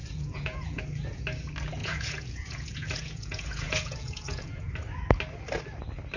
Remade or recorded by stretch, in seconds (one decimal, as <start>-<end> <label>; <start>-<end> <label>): 0.0-0.8 remade; 0.8-1.8 recorded; 1.8-4.7 remade; 4.7-6.2 recorded